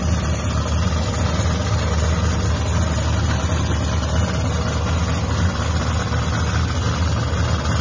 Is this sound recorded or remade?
recorded